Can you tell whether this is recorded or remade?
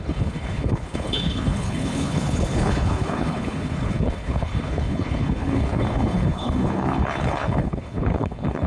remade